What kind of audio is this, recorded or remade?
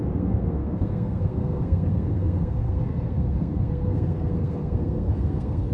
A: remade